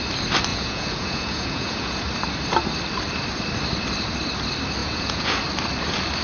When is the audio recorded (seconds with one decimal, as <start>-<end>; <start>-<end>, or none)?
0.0-0.5; 2.0-4.8; 5.4-6.2